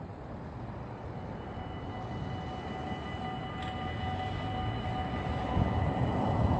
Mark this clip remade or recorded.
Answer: recorded